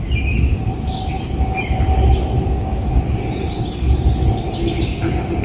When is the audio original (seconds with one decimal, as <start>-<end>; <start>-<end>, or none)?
0.0-5.4